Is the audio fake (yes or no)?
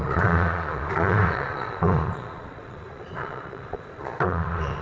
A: yes